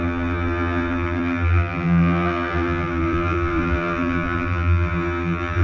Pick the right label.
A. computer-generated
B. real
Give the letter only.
A